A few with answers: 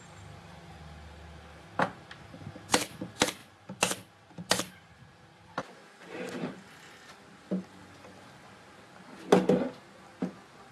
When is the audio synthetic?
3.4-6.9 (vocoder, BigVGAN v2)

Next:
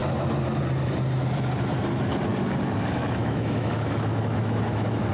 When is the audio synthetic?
3.2-5.1 (autoencoder, DAC-VAE)